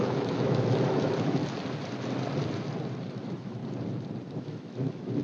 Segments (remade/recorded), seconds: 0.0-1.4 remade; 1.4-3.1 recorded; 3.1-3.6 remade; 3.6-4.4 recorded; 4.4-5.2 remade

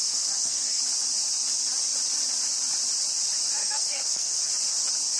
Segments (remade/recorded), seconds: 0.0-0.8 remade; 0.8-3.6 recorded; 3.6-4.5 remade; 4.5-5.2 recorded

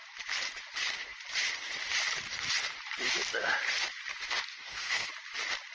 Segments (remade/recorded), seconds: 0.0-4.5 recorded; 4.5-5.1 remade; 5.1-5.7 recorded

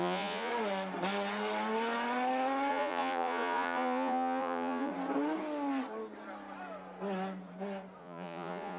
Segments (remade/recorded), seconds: 0.0-0.5 remade; 0.5-2.7 recorded; 2.7-4.9 remade; 4.9-8.0 recorded; 8.0-8.8 remade